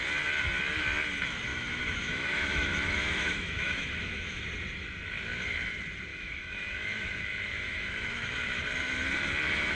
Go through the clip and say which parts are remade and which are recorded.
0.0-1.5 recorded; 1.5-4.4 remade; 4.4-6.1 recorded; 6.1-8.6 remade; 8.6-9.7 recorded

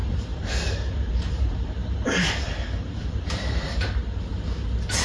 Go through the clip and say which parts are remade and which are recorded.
0.0-4.0 remade; 4.0-5.0 recorded